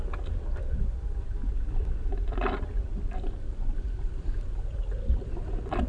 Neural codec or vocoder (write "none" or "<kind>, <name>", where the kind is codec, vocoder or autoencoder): vocoder, BigVGAN v2